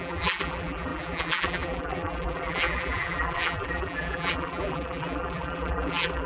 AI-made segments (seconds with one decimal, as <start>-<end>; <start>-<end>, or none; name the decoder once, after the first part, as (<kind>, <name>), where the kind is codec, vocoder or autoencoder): 0.0-6.3 (vocoder, BigVGAN v2)